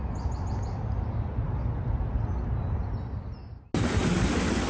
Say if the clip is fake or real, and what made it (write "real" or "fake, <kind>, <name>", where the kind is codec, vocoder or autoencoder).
real